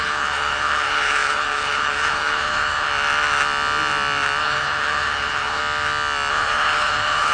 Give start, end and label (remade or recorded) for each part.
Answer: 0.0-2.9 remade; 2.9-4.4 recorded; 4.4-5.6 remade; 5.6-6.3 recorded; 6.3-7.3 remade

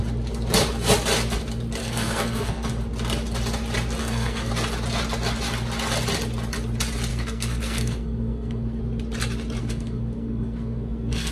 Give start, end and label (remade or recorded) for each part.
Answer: 0.0-1.8 recorded; 1.8-2.7 remade; 2.7-4.0 recorded; 4.0-4.5 remade; 4.5-7.1 recorded; 7.1-8.8 remade; 8.8-9.6 recorded; 9.6-11.3 remade

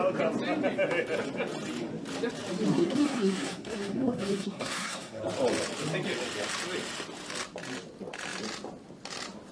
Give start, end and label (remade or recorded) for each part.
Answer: 0.0-2.7 recorded; 2.7-5.2 remade; 5.2-9.5 recorded

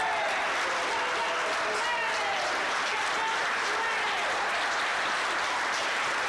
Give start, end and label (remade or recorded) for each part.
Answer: 0.0-2.3 recorded; 2.3-3.7 remade; 3.7-4.9 recorded; 4.9-6.3 remade